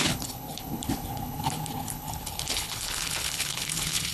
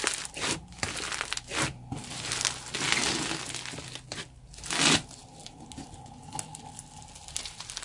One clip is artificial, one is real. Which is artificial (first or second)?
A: first